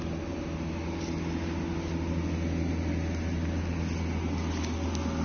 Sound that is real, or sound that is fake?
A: real